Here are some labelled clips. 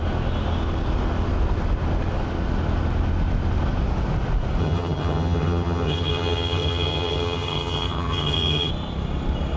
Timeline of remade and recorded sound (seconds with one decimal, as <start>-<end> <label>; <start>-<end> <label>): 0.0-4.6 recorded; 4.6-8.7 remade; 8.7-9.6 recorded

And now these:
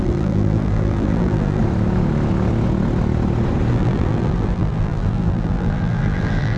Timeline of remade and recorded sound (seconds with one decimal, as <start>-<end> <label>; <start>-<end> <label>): 0.0-1.6 remade; 1.6-3.7 recorded; 3.7-6.6 remade

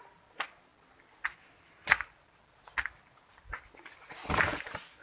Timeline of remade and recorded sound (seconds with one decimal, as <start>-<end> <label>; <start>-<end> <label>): 0.0-5.0 recorded

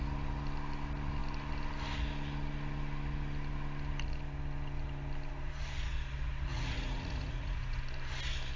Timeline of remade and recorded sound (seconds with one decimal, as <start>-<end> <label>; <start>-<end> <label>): 0.0-6.5 recorded; 6.5-7.8 remade; 7.8-8.6 recorded

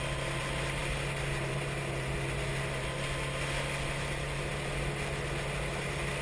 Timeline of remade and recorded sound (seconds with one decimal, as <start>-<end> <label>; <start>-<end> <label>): 0.0-6.2 recorded

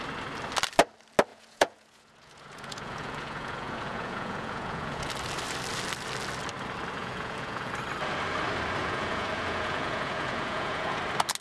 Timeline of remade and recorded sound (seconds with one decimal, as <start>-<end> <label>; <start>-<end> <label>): 0.0-1.3 recorded; 1.3-5.1 remade; 5.1-7.0 recorded; 7.0-7.7 remade; 7.7-8.8 recorded; 8.8-11.0 remade; 11.0-11.4 recorded

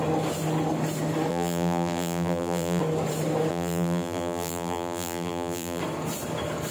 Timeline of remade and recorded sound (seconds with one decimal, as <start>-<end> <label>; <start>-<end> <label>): 0.0-1.3 recorded; 1.3-2.8 remade; 2.8-3.5 recorded; 3.5-5.8 remade; 5.8-6.7 recorded

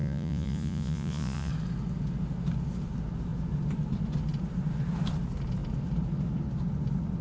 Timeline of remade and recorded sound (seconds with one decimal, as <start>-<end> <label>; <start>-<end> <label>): 0.0-1.5 remade; 1.5-7.2 recorded